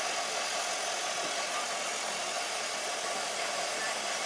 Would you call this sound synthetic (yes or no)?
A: no